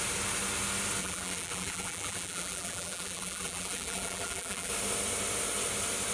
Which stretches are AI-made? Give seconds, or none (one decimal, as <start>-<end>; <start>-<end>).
1.0-4.7